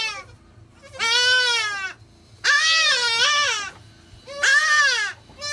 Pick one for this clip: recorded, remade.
recorded